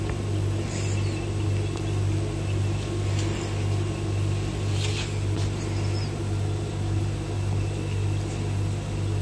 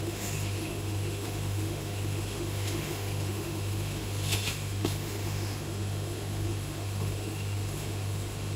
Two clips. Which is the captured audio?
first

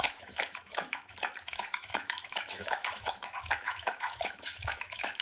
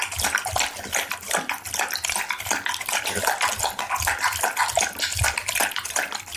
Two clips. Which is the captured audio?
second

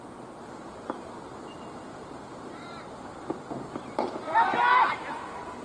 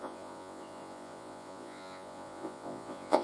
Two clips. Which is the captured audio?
first